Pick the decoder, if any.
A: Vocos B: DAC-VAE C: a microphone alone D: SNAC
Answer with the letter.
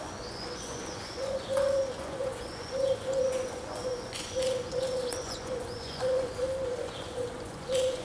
A